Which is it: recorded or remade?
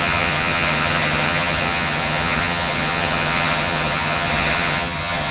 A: remade